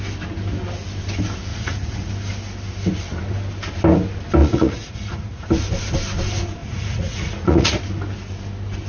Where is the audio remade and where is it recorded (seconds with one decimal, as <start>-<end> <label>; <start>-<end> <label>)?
0.0-1.5 recorded; 1.5-2.1 remade; 2.1-4.4 recorded; 4.4-5.5 remade; 5.5-6.6 recorded; 6.6-7.8 remade; 7.8-8.9 recorded